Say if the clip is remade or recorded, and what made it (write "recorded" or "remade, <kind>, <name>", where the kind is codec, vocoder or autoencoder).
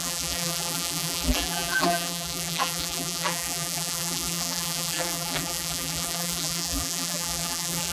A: remade, vocoder, BigVGAN v2